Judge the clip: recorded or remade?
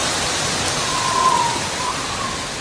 recorded